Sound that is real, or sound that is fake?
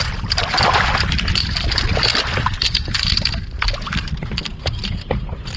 real